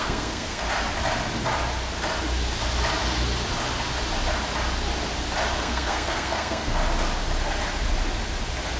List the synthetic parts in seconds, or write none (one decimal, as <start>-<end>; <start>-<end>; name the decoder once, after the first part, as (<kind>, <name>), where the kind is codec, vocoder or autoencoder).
0.0-0.6 (codec, SNAC); 5.6-6.8